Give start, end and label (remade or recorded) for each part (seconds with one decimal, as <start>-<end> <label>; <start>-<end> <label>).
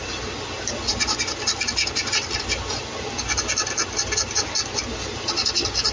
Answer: 0.0-5.9 recorded